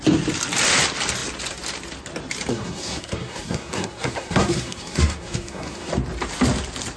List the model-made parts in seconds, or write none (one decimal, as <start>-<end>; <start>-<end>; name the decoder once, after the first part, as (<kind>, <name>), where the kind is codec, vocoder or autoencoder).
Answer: 2.5-5.9 (codec, SNAC)